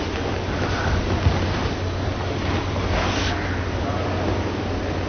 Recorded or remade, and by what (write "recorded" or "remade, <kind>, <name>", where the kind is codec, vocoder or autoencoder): recorded